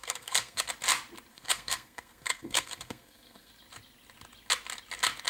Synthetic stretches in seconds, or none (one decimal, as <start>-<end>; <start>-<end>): 0.0-0.7; 1.3-3.5